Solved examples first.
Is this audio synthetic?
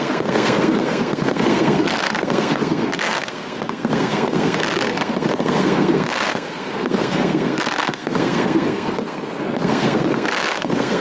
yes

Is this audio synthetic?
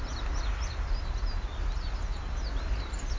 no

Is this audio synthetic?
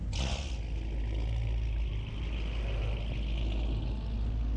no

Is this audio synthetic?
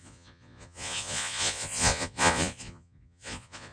yes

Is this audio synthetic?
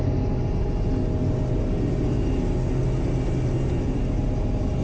no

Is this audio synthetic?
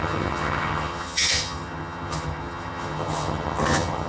yes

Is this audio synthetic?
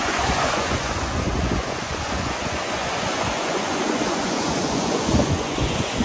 yes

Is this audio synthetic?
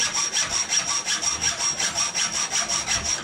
no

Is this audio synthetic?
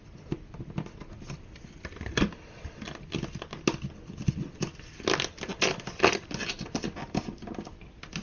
no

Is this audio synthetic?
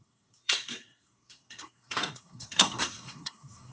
yes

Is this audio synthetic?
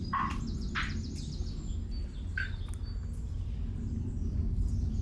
no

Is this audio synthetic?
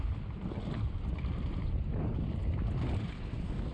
no